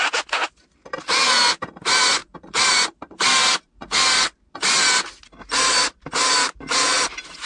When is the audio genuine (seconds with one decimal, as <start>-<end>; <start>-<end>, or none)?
0.0-7.5